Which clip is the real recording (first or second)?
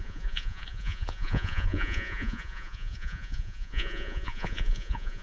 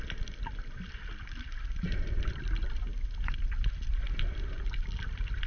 second